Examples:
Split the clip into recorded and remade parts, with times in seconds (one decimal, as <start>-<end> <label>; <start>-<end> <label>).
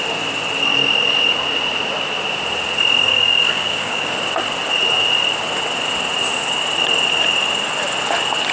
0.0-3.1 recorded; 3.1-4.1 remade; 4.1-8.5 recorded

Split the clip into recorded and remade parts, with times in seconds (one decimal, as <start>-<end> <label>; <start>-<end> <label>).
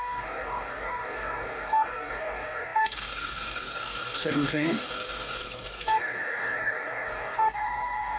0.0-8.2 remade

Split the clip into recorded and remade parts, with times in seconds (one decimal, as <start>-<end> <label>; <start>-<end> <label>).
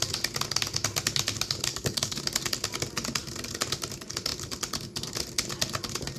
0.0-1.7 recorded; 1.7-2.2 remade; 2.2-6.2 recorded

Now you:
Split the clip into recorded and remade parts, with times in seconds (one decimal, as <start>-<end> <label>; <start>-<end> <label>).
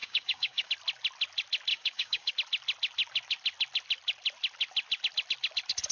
0.0-0.7 remade; 0.7-1.7 recorded; 1.7-2.3 remade; 2.3-5.9 recorded